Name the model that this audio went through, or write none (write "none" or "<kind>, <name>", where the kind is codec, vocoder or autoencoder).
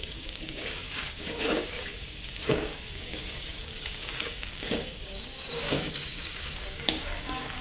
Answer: codec, DAC